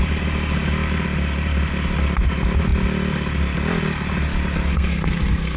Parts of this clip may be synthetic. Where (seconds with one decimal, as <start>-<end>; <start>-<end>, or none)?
4.7-5.6